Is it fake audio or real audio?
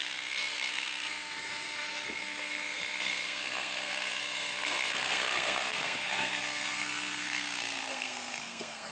fake